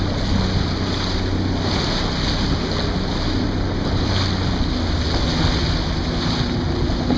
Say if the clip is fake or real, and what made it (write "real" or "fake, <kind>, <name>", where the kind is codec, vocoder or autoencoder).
real